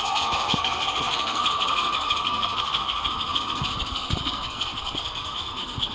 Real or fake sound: fake